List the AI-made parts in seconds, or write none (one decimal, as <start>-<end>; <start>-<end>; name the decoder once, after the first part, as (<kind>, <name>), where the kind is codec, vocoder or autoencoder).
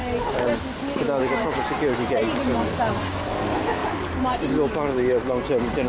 none